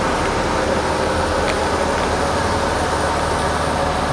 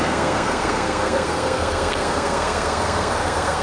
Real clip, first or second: first